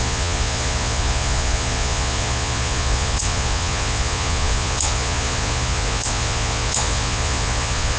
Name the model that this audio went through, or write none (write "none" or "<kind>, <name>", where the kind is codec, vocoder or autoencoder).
vocoder, Vocos